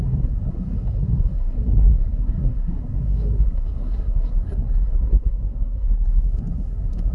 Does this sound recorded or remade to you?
remade